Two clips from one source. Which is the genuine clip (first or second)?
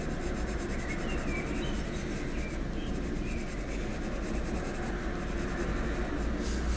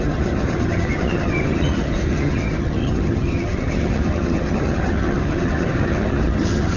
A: first